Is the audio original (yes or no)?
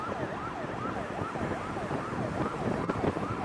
yes